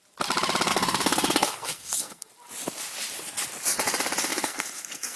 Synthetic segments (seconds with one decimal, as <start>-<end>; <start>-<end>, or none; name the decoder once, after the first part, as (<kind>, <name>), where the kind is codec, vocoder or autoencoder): 0.7-2.3 (codec, SNAC); 4.3-5.2